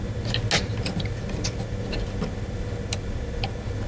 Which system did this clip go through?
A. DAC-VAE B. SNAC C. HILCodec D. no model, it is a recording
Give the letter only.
D